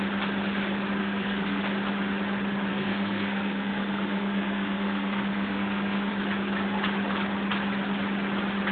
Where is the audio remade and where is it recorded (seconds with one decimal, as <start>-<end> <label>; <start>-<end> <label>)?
0.0-1.0 recorded; 1.0-1.6 remade; 1.6-2.7 recorded; 2.7-6.1 remade; 6.1-8.7 recorded